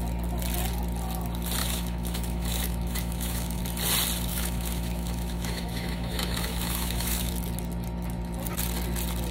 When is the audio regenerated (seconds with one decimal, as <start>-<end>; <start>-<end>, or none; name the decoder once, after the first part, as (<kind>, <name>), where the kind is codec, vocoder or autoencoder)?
1.6-3.6 (autoencoder, DAC-VAE); 4.3-7.3